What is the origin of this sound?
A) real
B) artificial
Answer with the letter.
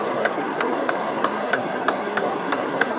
B